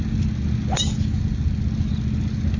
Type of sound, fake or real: real